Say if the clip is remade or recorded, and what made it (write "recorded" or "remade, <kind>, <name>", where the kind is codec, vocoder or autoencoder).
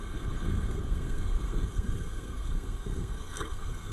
remade, codec, SNAC